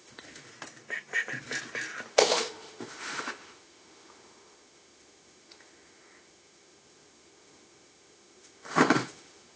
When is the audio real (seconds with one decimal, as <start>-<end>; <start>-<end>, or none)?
0.5-2.1